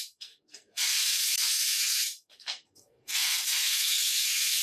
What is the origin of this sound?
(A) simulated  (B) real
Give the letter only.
A